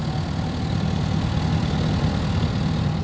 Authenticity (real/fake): real